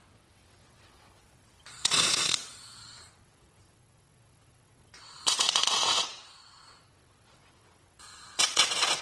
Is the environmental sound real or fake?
fake